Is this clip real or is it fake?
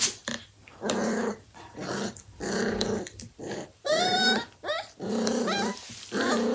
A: fake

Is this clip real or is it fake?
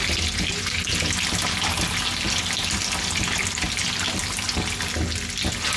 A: real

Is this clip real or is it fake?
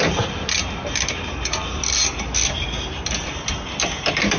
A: real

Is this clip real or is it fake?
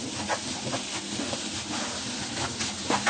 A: real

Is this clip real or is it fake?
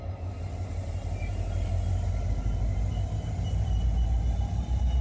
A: real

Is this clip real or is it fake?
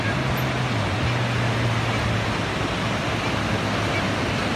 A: real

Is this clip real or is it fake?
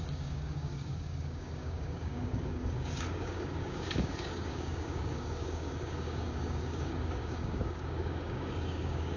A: fake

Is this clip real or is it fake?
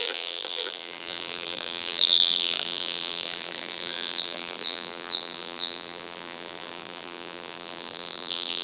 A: fake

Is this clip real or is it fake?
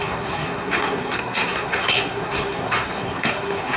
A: fake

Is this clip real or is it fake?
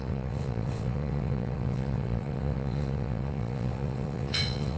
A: fake